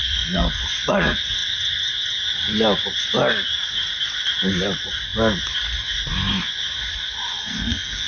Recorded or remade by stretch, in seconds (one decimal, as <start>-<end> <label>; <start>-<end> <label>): 0.0-0.5 remade; 0.5-7.4 recorded; 7.4-8.1 remade